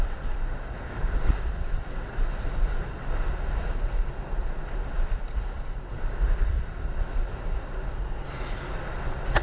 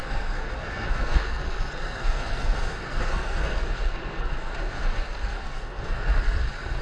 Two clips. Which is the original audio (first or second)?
first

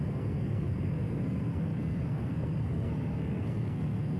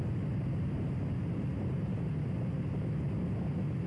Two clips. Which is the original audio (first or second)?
second